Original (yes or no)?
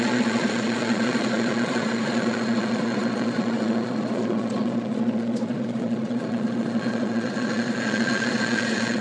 no